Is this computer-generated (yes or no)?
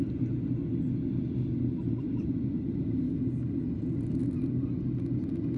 no